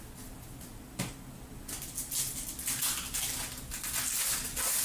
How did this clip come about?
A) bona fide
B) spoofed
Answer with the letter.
A